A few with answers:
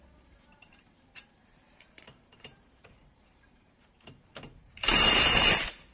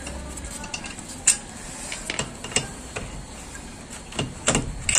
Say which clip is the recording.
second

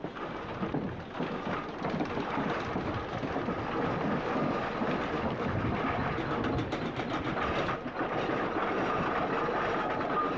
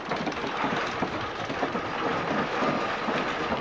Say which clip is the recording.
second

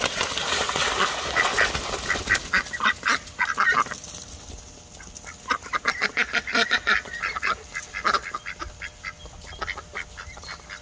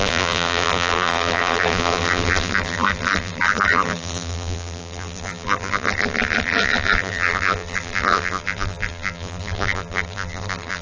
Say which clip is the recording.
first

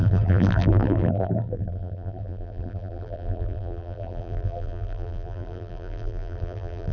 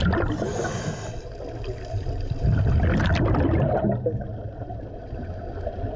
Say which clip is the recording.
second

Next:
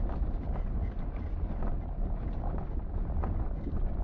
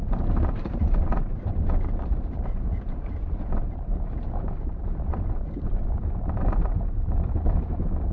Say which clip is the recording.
first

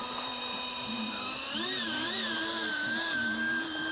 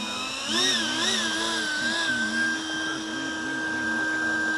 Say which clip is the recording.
second